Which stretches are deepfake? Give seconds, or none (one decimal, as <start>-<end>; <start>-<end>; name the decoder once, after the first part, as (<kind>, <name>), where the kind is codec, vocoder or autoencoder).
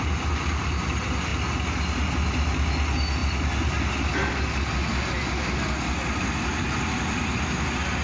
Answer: none